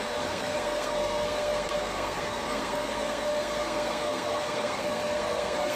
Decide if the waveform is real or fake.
fake